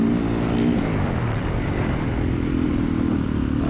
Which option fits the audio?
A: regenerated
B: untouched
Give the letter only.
B